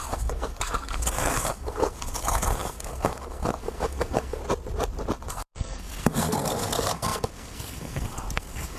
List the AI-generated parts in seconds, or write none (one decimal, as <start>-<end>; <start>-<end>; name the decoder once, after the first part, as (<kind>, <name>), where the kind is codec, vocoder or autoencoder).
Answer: 0.0-4.4 (codec, SNAC); 5.3-8.8